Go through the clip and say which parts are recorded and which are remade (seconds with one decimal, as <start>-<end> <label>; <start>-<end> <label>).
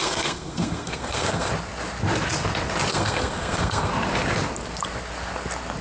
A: 0.0-1.5 remade; 1.5-2.9 recorded; 2.9-3.9 remade; 3.9-5.8 recorded